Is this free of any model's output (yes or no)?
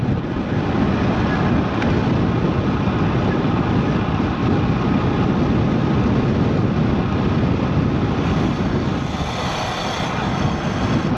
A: yes